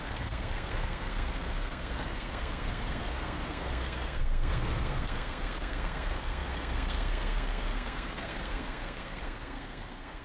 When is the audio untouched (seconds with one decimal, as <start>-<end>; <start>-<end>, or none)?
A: none